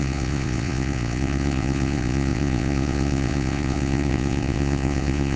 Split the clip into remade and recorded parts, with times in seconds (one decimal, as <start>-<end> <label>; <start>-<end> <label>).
0.0-5.4 remade